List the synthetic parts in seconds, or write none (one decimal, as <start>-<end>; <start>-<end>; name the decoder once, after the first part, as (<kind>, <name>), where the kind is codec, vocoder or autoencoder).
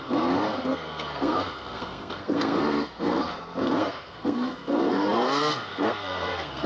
0.0-6.7 (codec, SNAC)